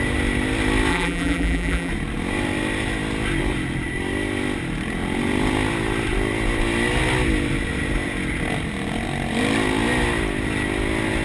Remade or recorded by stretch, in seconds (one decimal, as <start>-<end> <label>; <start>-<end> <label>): 0.0-0.9 recorded; 0.9-1.9 remade; 1.9-11.2 recorded